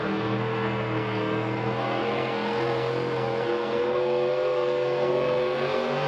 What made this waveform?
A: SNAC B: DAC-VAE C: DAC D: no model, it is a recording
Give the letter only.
A